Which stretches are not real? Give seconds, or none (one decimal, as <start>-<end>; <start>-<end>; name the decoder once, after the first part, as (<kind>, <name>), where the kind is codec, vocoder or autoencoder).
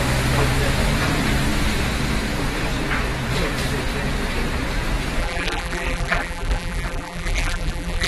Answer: 5.2-8.1 (vocoder, BigVGAN v2)